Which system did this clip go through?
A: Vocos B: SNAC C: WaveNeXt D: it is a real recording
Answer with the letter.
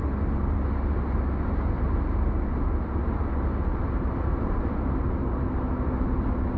D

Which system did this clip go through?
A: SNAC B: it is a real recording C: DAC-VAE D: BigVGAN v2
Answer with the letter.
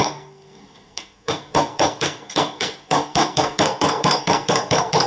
A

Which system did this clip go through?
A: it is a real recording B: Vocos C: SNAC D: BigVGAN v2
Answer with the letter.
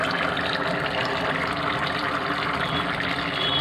A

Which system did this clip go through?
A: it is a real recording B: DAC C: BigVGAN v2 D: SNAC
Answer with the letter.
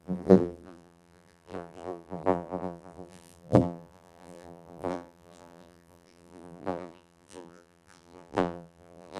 C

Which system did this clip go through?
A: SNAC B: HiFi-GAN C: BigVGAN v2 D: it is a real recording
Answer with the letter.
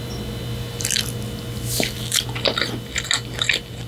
D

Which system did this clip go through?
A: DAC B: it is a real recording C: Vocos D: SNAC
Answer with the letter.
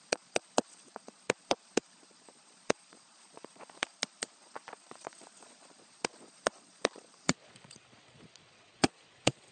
C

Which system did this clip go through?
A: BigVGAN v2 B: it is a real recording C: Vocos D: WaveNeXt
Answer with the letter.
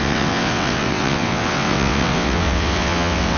D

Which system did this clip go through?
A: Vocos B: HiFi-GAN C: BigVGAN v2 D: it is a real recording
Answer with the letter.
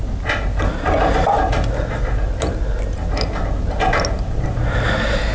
D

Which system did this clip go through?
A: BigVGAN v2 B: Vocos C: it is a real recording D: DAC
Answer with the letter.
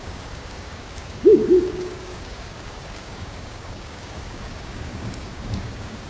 D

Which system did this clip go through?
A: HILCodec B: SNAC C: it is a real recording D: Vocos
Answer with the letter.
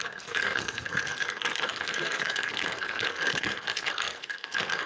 B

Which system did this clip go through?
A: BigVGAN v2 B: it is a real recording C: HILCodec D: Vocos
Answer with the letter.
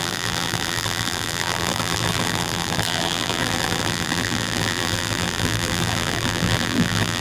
A